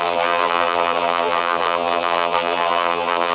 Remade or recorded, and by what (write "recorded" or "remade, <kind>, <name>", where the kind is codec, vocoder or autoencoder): remade, vocoder, BigVGAN v2